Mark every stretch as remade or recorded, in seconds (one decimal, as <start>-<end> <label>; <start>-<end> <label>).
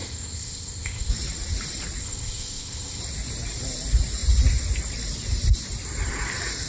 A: 0.0-1.1 remade; 1.1-2.0 recorded; 2.0-3.0 remade; 3.0-6.7 recorded